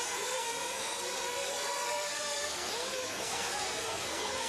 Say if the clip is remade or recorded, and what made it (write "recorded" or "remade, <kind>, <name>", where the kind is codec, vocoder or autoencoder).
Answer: remade, codec, SNAC